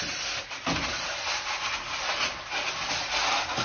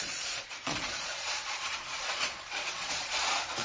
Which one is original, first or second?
first